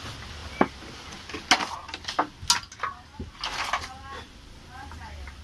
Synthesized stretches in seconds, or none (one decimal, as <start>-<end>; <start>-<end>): none